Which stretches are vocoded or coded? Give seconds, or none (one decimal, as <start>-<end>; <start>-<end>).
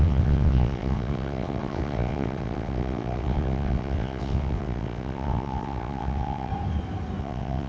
0.0-6.5; 7.2-7.7